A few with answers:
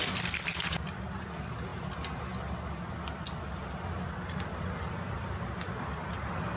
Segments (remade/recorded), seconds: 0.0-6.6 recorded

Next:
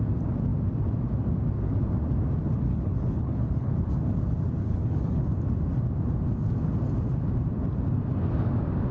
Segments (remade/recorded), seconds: 0.0-2.7 recorded; 2.7-3.7 remade; 3.7-4.6 recorded; 4.6-5.2 remade; 5.2-8.9 recorded

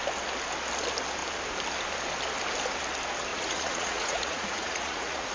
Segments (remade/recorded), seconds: 0.0-3.3 recorded; 3.3-5.3 remade

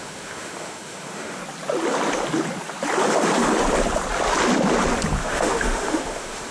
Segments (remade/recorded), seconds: 0.0-1.4 remade; 1.4-5.2 recorded; 5.2-6.5 remade

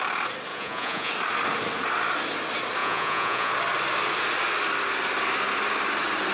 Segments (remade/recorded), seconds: 0.0-0.5 recorded; 0.5-1.1 remade; 1.1-2.8 recorded; 2.8-3.5 remade; 3.5-6.3 recorded

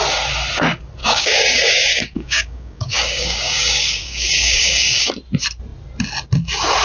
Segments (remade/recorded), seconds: 0.0-1.0 recorded; 1.0-5.1 remade; 5.1-6.8 recorded

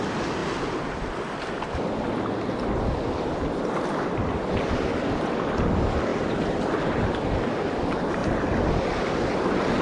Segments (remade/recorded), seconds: 0.0-6.1 recorded; 6.1-7.3 remade; 7.3-8.2 recorded; 8.2-8.7 remade; 8.7-9.8 recorded

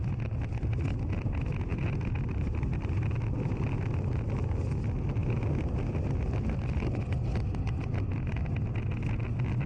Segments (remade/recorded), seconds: 0.0-9.7 recorded